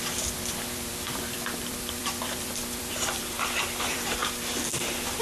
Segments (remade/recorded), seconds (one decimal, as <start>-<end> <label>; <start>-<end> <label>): 0.0-4.2 remade; 4.2-4.8 recorded; 4.8-5.2 remade

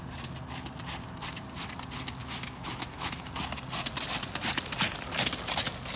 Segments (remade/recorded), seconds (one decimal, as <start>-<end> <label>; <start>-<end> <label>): 0.0-2.2 recorded; 2.2-3.3 remade; 3.3-6.0 recorded